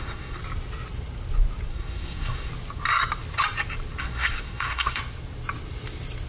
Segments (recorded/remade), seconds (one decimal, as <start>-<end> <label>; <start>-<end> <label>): 0.0-0.4 remade; 0.4-1.7 recorded; 1.7-2.5 remade; 2.5-4.0 recorded; 4.0-5.0 remade; 5.0-6.3 recorded